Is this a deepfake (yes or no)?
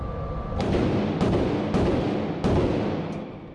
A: no